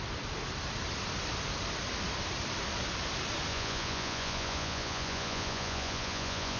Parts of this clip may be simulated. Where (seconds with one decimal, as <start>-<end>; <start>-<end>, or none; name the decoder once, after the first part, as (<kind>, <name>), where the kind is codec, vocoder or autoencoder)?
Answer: 3.5-6.6 (vocoder, Vocos)